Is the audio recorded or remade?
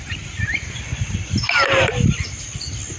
recorded